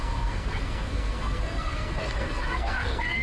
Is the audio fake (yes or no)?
yes